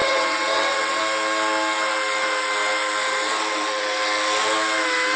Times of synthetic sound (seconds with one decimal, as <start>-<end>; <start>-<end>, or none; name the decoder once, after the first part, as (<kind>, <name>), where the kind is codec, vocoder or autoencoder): 0.0-1.0 (vocoder, WaveNeXt)